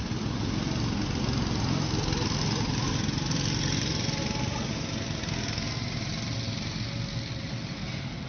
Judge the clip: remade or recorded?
recorded